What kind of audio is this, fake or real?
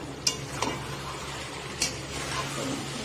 real